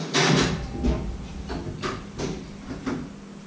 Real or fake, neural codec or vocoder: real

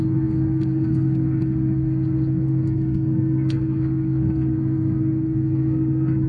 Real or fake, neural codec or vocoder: fake, codec, SNAC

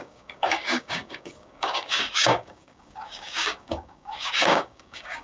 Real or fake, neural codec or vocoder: fake, codec, DAC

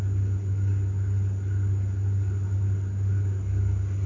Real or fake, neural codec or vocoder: real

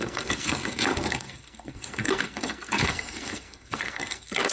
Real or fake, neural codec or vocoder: fake, codec, SNAC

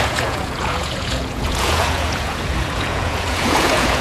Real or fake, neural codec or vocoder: fake, vocoder, Vocos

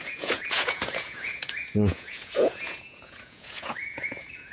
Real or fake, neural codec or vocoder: fake, vocoder, Vocos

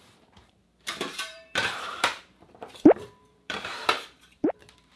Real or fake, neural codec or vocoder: fake, vocoder, BigVGAN v2